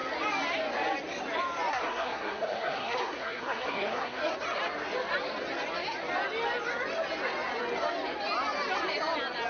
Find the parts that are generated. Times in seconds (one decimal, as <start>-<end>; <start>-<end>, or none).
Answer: 1.7-4.2